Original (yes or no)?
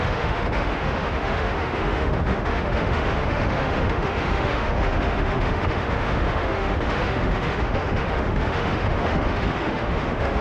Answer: no